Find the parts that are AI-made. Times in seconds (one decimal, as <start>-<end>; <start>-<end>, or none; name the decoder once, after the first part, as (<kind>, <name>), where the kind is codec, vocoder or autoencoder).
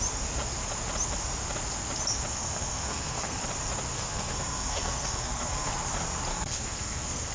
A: 2.3-3.4 (codec, SNAC); 3.9-5.7; 6.3-7.3